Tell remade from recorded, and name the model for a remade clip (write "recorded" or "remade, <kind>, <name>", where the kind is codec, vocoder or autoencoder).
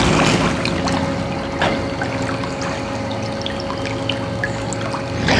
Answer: recorded